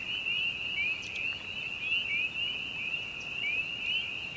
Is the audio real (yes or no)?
yes